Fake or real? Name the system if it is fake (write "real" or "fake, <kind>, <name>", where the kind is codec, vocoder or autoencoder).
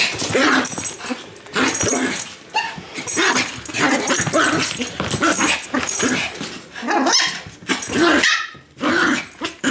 real